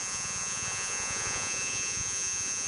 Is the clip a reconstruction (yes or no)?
yes